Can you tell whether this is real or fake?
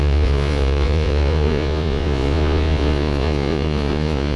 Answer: fake